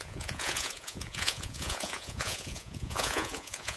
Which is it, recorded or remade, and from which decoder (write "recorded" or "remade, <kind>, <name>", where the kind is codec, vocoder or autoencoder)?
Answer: remade, vocoder, Vocos